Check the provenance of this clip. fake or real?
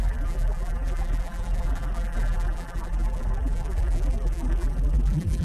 fake